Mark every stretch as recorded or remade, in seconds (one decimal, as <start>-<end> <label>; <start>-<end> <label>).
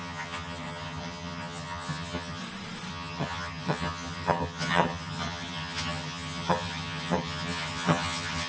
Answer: 0.0-2.4 remade; 2.4-2.9 recorded; 2.9-8.5 remade